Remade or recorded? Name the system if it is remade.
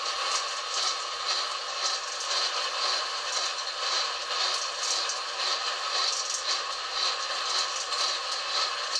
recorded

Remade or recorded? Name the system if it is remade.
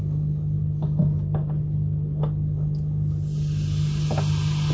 recorded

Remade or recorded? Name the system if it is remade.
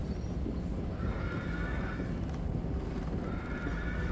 recorded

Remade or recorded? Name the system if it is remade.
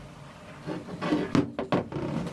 recorded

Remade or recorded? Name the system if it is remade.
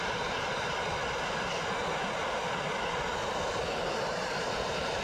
recorded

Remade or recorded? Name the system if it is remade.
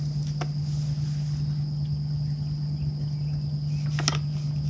recorded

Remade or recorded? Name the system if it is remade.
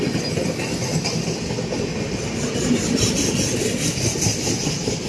recorded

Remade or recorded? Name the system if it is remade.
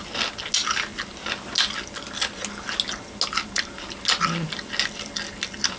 recorded